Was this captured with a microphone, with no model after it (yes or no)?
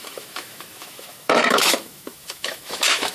no